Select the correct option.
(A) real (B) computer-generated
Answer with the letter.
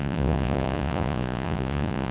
B